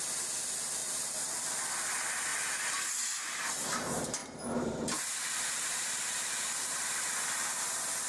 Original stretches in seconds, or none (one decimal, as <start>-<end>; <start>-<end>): 0.0-0.8; 1.5-4.2; 7.6-8.1